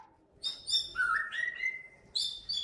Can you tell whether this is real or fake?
real